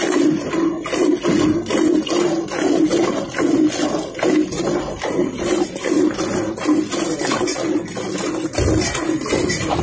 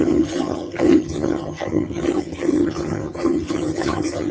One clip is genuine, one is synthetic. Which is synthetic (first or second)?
second